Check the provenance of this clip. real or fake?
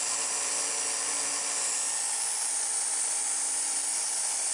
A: real